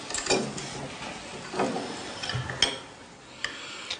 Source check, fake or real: real